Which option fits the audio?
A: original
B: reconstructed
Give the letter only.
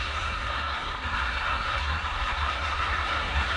B